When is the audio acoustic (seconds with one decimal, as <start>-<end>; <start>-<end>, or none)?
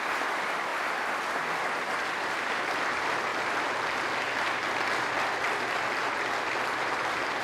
0.7-1.3; 3.3-5.4